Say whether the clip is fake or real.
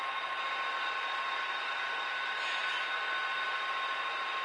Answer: real